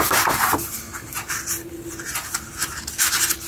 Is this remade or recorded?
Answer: recorded